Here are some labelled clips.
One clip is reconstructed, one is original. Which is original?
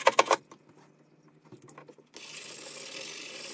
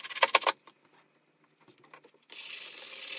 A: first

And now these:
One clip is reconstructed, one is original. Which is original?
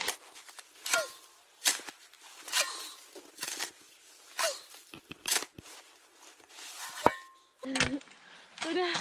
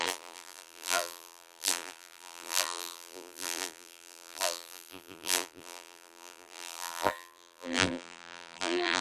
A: first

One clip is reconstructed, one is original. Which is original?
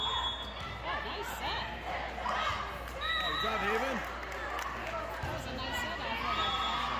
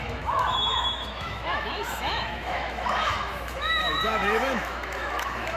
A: first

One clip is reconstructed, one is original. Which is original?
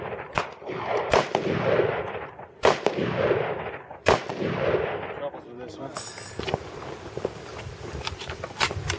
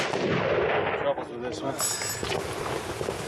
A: second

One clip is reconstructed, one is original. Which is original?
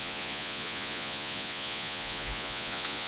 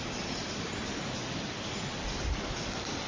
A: second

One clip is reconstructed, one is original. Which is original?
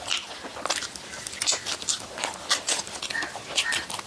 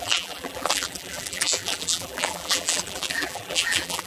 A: first